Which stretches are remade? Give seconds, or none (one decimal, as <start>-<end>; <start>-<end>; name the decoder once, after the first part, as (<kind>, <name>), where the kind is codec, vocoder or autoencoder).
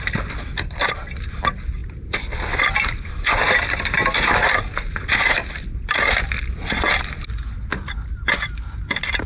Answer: none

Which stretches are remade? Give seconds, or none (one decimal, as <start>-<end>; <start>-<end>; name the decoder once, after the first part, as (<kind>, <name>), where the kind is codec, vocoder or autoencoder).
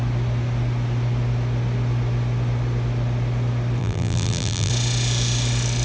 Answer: 3.8-4.7 (vocoder, BigVGAN v2)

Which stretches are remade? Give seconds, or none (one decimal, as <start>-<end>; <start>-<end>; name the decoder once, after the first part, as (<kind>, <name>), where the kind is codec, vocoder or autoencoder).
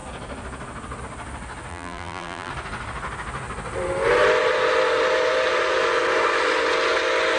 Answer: 1.7-2.5 (vocoder, BigVGAN v2)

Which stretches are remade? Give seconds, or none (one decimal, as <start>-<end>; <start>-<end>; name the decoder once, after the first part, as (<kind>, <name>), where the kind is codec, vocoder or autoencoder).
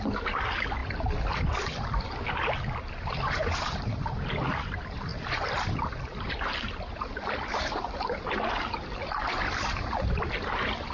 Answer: 3.4-4.0 (vocoder, BigVGAN v2)